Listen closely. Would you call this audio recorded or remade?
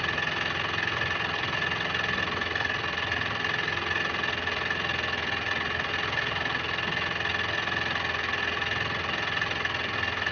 recorded